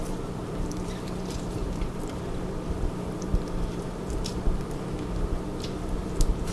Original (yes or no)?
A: no